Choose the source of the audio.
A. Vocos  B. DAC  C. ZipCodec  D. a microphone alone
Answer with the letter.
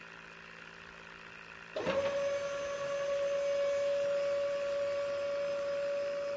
D